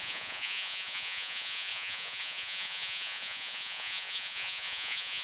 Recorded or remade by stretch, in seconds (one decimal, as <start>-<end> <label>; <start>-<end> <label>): 0.0-5.2 remade